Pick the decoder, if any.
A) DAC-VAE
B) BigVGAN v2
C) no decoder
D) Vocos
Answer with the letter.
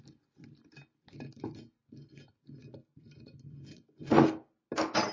C